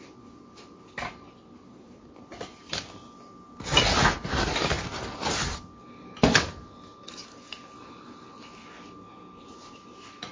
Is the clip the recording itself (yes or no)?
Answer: yes